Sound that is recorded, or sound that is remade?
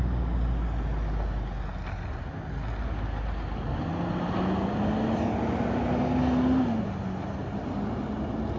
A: recorded